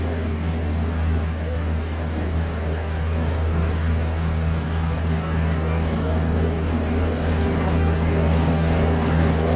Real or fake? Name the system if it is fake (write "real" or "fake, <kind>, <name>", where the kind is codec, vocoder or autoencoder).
fake, codec, DAC